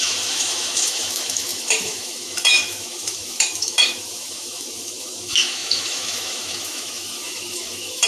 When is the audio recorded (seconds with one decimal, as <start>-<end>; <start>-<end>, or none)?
none